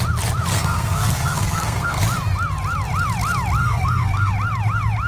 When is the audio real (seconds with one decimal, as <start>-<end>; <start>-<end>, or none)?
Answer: 0.0-0.5; 2.0-3.6; 4.3-5.1